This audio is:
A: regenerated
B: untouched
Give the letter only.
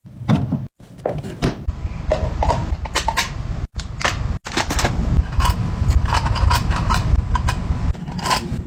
B